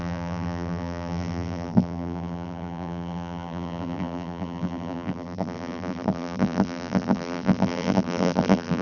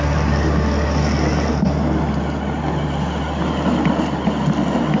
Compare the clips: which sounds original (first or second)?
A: second